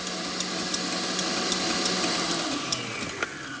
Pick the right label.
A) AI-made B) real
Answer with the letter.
B